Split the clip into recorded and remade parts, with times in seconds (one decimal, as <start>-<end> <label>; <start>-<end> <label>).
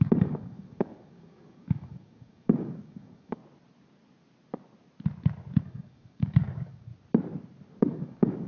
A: 0.0-3.4 remade; 3.4-5.6 recorded; 5.6-6.9 remade; 6.9-7.8 recorded; 7.8-8.5 remade